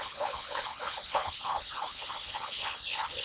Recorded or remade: remade